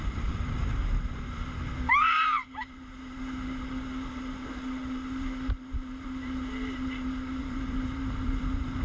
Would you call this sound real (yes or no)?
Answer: no